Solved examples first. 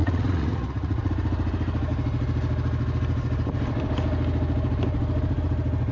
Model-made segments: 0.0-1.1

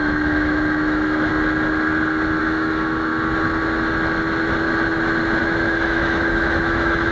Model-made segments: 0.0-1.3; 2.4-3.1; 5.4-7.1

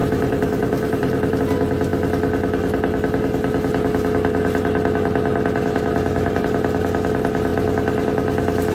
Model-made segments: 0.0-1.4

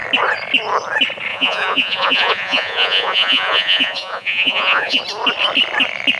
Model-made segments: 1.3-5.0

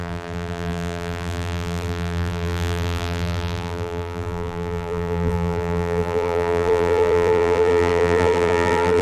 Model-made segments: 0.0-9.0

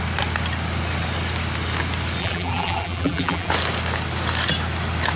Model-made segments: 2.2-3.5